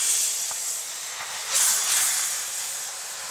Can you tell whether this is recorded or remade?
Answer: recorded